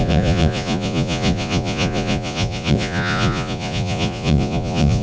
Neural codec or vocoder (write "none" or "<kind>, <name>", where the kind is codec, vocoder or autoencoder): vocoder, Vocos